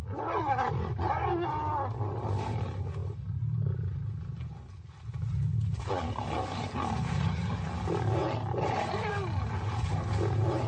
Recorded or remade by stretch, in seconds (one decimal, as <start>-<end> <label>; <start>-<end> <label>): 0.0-10.7 recorded